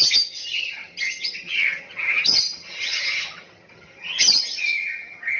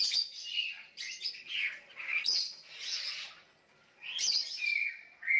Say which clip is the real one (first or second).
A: second